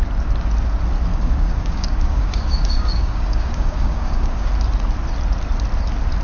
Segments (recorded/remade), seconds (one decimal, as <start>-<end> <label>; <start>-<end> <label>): 0.0-1.1 recorded; 1.1-4.5 remade; 4.5-6.2 recorded